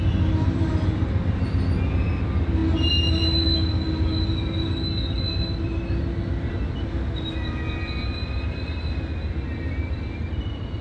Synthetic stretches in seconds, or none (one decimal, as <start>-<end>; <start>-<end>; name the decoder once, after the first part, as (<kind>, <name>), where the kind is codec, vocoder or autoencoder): none